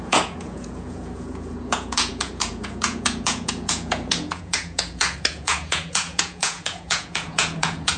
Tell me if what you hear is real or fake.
fake